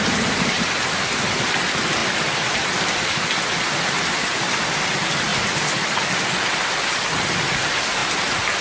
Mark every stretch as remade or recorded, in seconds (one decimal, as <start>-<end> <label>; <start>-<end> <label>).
0.0-8.6 recorded